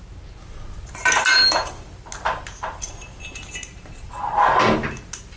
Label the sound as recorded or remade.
recorded